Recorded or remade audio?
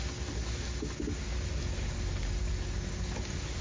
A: recorded